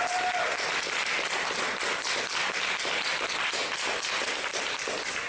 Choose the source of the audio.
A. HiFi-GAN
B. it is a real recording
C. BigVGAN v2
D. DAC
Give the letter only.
B